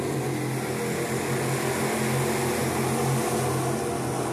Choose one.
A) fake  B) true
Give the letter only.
B